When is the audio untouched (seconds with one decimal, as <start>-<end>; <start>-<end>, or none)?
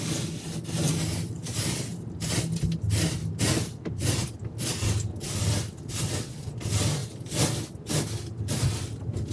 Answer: 0.0-9.3